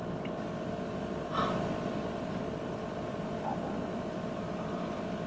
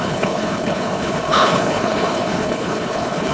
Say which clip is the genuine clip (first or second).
first